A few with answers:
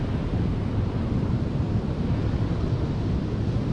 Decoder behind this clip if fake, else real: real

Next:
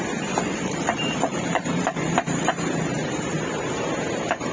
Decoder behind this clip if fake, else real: fake, vocoder, BigVGAN v2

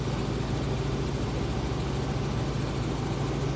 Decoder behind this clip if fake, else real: real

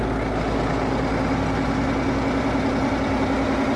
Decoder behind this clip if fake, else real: real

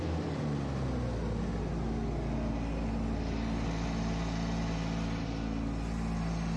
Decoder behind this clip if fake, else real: real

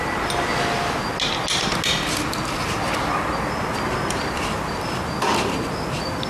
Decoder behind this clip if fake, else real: real